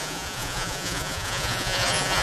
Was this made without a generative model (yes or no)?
no